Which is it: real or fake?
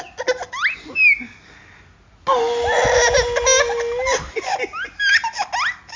real